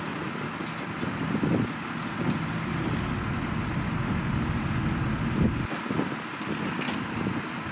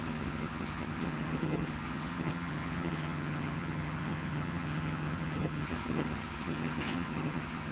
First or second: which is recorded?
first